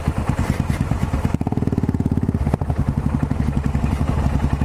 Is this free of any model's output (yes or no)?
yes